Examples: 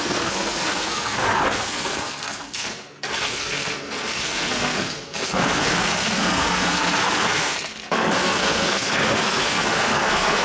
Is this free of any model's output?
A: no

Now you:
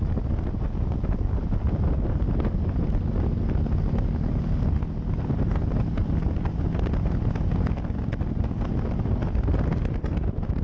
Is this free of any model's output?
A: yes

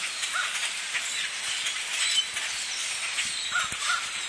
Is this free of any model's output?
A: yes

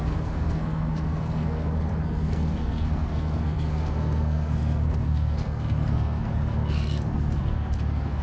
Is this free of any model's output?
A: no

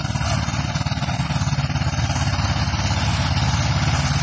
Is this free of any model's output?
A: yes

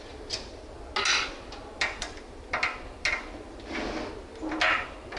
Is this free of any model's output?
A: yes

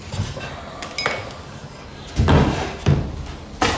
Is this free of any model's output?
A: yes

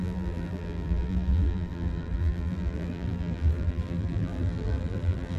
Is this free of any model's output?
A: no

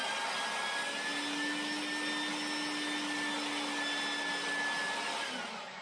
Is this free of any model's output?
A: yes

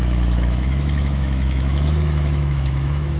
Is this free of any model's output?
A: no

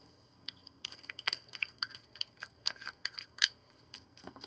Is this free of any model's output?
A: no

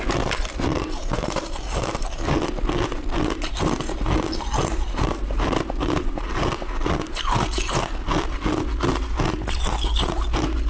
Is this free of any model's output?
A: yes